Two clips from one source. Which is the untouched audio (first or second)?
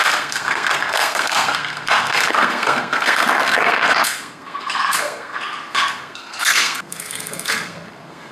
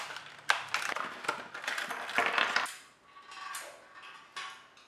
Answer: second